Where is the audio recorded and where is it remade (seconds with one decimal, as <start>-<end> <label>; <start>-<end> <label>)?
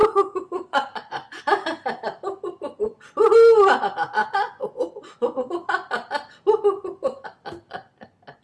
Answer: 0.0-1.4 remade; 1.4-4.2 recorded; 4.2-5.5 remade; 5.5-8.4 recorded